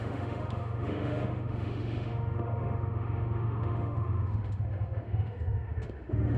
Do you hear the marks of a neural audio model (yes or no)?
yes